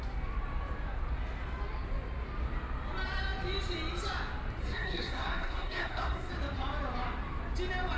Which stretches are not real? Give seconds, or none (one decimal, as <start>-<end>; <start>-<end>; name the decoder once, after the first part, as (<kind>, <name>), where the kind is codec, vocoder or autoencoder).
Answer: 4.6-6.3 (codec, SNAC)